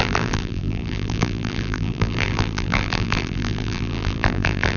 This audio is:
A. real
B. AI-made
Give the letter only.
B